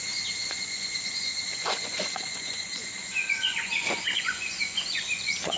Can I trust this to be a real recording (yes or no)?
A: no